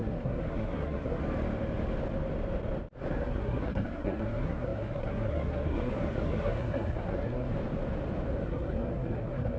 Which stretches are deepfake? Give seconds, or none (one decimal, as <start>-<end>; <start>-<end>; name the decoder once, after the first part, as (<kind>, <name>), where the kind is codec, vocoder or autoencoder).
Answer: 0.0-1.2 (codec, SNAC); 3.1-7.5; 8.4-9.6